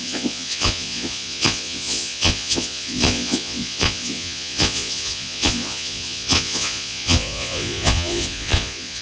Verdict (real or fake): fake